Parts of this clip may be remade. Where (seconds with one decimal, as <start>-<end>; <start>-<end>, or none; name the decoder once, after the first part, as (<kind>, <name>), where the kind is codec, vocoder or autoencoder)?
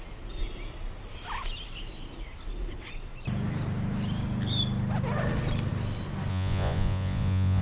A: 6.3-7.6 (vocoder, Vocos)